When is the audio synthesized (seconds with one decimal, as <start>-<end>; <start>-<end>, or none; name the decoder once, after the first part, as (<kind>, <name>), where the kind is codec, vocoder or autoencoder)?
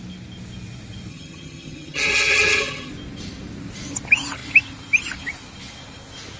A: 1.1-2.9 (vocoder, HiFi-GAN)